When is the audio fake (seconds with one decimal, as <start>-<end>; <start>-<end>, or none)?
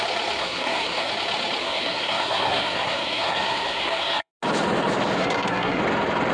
0.4-1.1; 1.6-4.3; 5.2-5.8